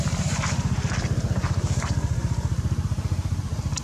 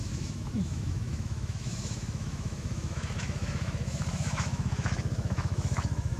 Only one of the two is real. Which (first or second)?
first